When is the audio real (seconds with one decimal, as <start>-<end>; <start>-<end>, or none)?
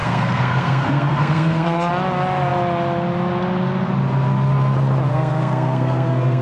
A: 1.9-5.1